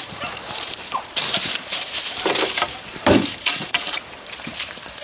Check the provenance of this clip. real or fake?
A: fake